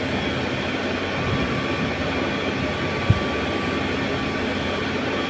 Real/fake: real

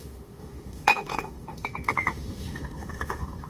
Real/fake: fake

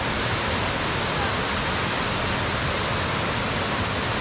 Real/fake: real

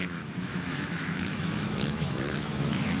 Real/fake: fake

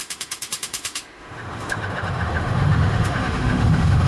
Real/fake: fake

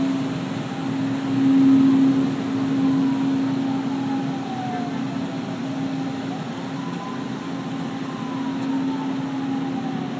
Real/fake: real